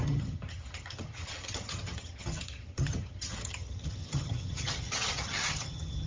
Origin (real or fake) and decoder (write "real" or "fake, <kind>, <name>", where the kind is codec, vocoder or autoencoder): fake, vocoder, HiFi-GAN